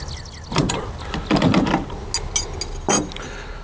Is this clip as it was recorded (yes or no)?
yes